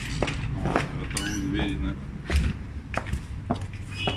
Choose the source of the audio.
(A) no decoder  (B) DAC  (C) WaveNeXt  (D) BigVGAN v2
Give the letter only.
A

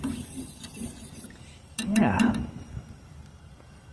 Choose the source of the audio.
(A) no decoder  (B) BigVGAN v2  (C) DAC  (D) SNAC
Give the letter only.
B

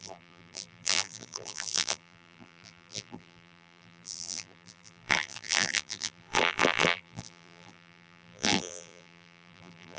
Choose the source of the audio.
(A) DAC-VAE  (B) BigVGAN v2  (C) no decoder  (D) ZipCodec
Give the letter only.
B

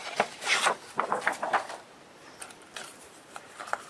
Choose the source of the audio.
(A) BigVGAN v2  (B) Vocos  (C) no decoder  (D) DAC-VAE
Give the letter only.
A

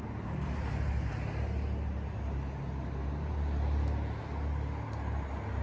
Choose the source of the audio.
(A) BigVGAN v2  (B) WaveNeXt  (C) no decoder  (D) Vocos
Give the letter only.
C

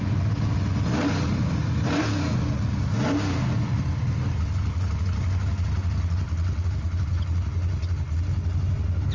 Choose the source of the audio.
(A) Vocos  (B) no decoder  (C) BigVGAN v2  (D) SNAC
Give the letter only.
B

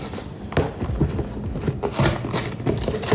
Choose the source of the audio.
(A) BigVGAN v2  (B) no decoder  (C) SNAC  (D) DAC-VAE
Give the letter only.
B